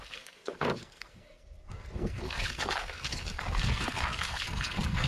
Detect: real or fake fake